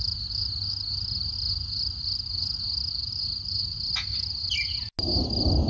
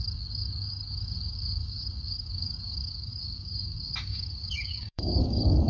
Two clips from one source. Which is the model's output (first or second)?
second